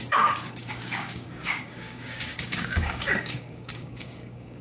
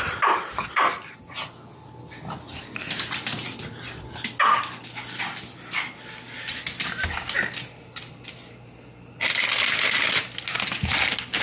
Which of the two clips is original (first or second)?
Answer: second